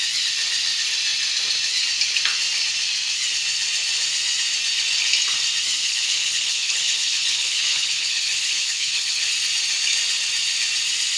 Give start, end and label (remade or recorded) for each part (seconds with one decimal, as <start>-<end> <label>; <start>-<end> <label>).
0.0-5.8 recorded; 5.8-9.3 remade; 9.3-11.2 recorded